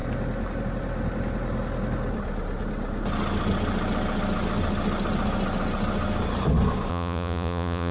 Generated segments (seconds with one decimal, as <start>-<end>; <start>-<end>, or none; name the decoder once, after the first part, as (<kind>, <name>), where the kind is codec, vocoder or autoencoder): 6.9-7.9 (vocoder, Vocos)